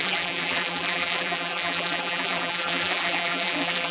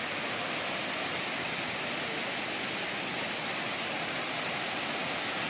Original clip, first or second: second